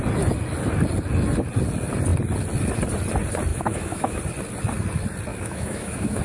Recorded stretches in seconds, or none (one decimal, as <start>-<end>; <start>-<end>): 0.0-3.5; 4.2-5.3

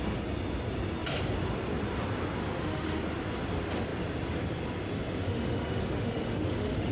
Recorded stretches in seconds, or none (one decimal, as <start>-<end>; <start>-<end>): 0.0-2.4; 3.0-5.2

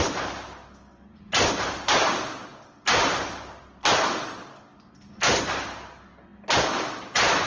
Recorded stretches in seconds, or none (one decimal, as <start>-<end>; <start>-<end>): 0.0-7.5

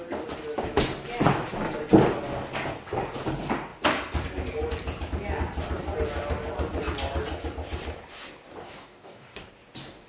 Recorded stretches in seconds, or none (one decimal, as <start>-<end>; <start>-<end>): 0.0-8.6; 9.5-10.1

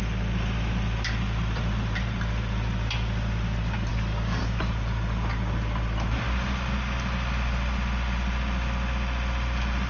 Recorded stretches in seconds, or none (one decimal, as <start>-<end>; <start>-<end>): 0.0-3.9; 4.4-9.9